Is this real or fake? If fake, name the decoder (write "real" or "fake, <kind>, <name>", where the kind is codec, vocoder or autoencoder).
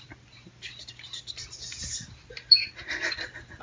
real